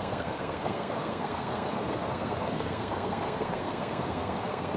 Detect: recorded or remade remade